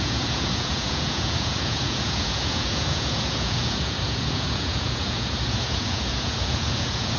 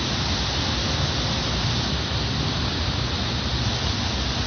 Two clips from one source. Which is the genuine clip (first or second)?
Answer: second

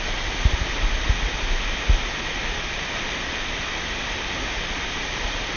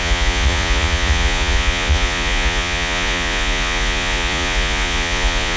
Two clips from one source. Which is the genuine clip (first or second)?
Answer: first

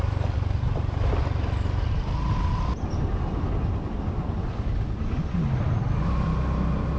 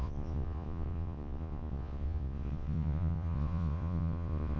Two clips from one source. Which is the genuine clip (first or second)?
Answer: first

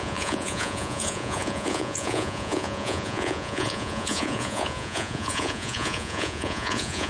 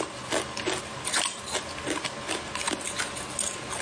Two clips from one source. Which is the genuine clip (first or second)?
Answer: second